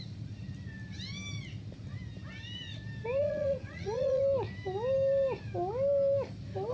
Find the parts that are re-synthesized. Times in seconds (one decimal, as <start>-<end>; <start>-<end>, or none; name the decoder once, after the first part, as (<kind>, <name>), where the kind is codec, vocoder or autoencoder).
3.2-4.2 (vocoder, Vocos)